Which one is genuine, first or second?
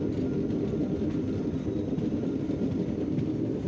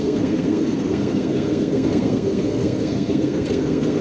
first